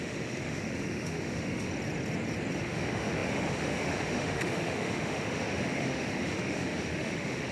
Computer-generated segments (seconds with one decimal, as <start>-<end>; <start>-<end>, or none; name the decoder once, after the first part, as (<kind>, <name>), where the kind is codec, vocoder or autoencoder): 0.0-1.7 (autoencoder, DAC-VAE); 2.6-7.5